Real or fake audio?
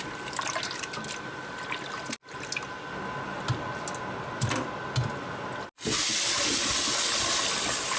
real